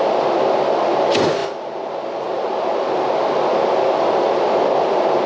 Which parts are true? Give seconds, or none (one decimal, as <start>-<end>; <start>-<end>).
0.0-5.3

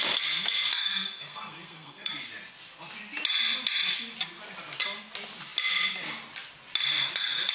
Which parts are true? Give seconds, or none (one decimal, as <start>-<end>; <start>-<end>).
0.0-0.8; 2.1-7.5

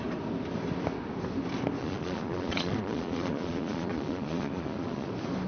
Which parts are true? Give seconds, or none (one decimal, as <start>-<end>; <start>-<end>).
0.0-1.8; 5.1-5.5

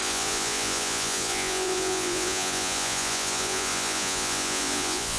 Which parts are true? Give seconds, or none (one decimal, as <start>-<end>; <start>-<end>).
none

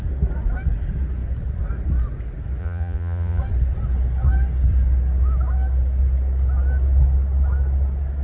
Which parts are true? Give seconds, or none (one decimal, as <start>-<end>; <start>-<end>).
0.0-2.6; 3.4-8.2

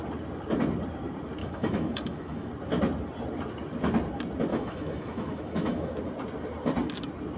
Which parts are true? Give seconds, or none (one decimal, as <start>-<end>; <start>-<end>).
0.0-1.4; 2.5-4.5; 5.9-7.4